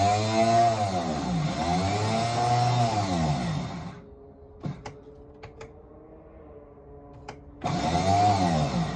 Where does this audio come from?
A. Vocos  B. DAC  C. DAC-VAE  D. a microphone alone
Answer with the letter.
D